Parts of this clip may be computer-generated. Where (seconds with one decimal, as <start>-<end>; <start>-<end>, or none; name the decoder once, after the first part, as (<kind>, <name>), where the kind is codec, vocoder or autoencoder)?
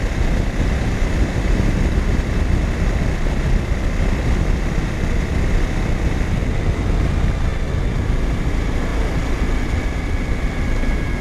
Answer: none